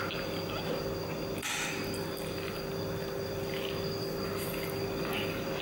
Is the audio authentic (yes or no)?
yes